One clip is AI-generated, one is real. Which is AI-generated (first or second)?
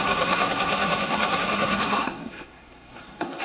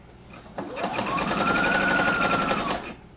first